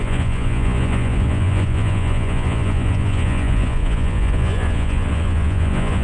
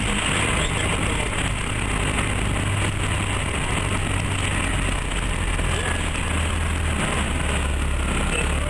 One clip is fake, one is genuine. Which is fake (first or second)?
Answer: first